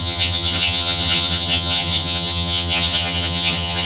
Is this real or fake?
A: fake